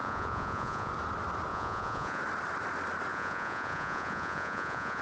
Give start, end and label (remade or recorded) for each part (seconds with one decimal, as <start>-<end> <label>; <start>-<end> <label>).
0.0-0.9 remade; 0.9-1.5 recorded; 1.5-2.2 remade; 2.2-3.1 recorded; 3.1-5.0 remade